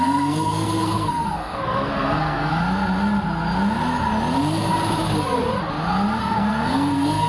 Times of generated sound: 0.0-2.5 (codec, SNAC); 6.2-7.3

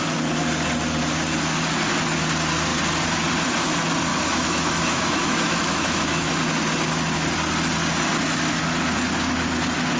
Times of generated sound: 4.1-6.3 (autoencoder, DAC-VAE)

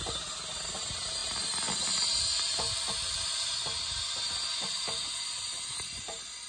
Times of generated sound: none

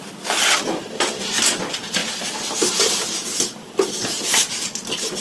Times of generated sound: none

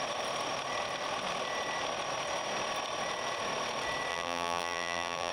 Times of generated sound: 4.1-5.3 (vocoder, BigVGAN v2)

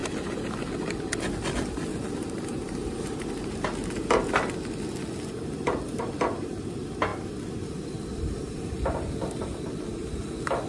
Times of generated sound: 1.9-4.3 (vocoder, BigVGAN v2)